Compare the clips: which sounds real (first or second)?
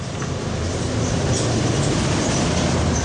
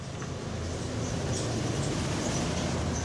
second